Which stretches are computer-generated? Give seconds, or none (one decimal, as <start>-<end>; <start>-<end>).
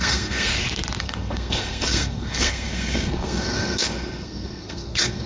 0.0-0.5; 1.0-5.3